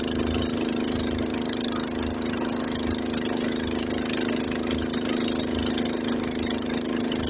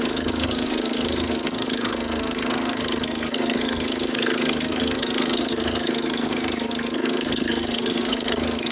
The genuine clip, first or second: first